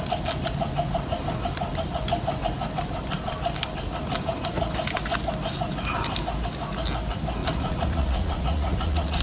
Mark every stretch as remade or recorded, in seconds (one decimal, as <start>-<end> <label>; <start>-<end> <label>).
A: 0.0-7.4 recorded; 7.4-9.2 remade